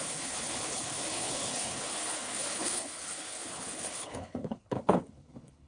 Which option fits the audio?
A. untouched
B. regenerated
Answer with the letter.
B